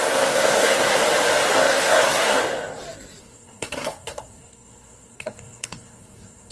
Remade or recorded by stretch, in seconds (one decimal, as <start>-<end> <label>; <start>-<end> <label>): 0.0-1.0 remade; 1.0-1.5 recorded; 1.5-2.4 remade; 2.4-3.2 recorded; 3.2-6.5 remade